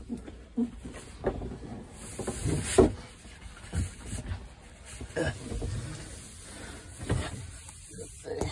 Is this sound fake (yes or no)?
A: no